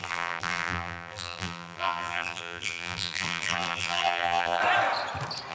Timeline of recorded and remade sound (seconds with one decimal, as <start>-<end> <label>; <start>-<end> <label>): 0.0-4.6 remade; 4.6-5.5 recorded